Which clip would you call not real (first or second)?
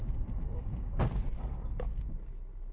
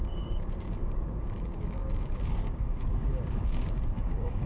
second